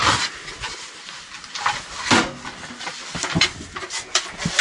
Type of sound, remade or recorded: recorded